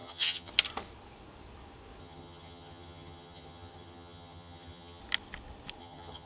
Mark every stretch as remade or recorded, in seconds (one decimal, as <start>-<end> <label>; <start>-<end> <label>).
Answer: 0.0-0.5 remade; 0.5-2.0 recorded; 2.0-5.0 remade; 5.0-5.8 recorded; 5.8-6.3 remade